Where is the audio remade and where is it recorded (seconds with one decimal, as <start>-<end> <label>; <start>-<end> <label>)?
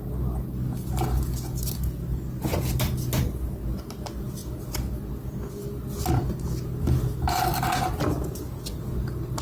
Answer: 0.0-9.4 recorded